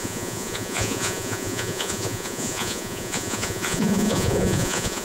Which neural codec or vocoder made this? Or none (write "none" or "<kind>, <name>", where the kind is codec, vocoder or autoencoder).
vocoder, Vocos